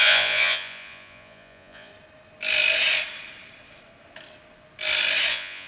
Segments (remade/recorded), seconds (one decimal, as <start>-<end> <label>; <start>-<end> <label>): 0.0-1.9 remade; 1.9-5.3 recorded; 5.3-5.7 remade